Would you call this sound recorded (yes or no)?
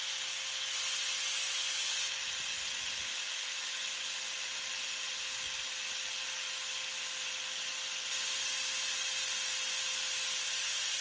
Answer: yes